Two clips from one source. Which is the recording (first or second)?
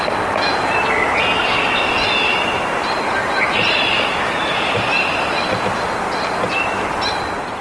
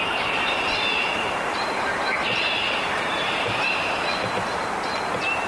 first